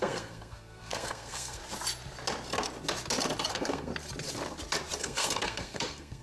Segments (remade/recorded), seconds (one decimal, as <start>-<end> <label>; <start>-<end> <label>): 0.0-1.6 remade; 1.6-3.5 recorded; 3.5-3.9 remade; 3.9-5.0 recorded; 5.0-6.2 remade